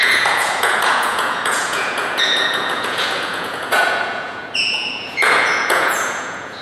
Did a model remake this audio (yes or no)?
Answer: yes